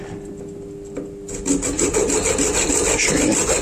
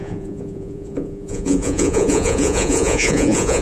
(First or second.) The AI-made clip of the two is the second